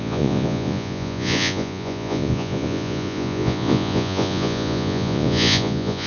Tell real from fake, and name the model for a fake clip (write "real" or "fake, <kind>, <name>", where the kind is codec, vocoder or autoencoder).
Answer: fake, vocoder, Vocos